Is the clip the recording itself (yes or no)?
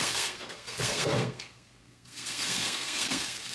no